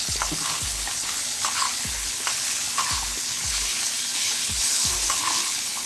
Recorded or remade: remade